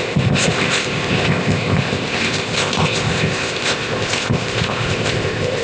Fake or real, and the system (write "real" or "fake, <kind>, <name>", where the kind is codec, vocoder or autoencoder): fake, codec, ZipCodec